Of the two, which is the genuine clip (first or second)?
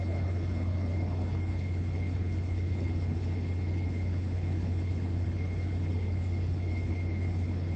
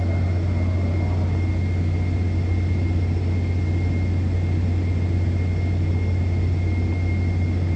second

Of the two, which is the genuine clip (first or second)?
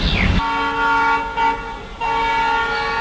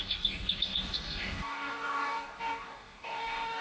first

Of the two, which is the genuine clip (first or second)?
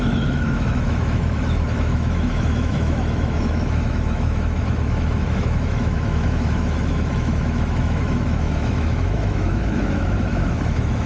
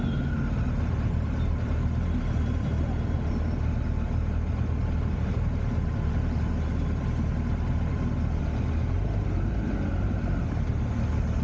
second